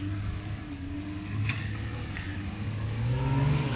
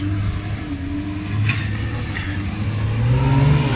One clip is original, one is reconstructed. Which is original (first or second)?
second